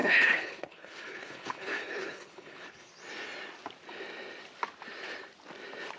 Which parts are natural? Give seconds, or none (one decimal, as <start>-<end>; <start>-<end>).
2.9-6.0